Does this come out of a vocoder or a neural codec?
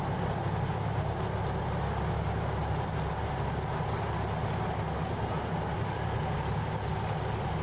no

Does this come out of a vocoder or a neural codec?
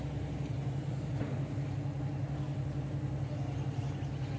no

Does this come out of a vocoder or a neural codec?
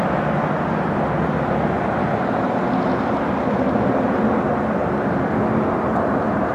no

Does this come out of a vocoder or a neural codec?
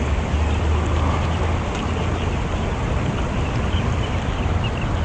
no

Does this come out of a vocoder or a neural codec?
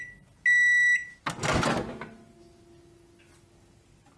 no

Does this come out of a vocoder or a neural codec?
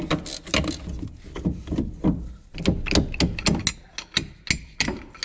no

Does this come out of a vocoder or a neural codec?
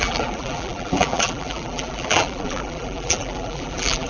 yes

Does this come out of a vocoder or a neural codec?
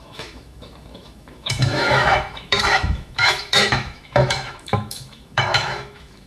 yes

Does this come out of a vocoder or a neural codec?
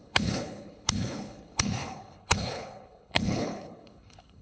yes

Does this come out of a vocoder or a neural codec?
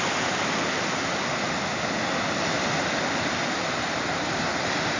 no